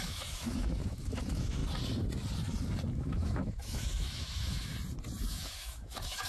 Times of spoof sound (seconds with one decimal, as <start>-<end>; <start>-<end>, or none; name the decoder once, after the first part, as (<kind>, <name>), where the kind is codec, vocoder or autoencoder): 0.0-1.6 (autoencoder, DAC-VAE); 2.9-4.7; 5.3-6.3